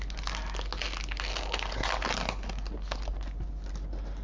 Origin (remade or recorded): recorded